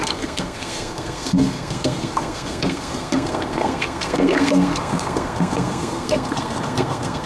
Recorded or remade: remade